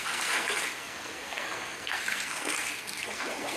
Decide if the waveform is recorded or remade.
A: remade